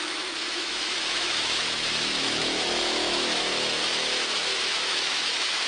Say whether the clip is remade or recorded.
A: remade